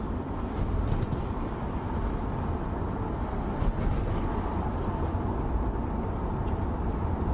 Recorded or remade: recorded